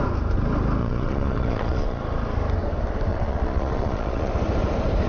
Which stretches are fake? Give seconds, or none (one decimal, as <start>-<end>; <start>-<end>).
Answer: 0.8-2.0; 3.1-4.3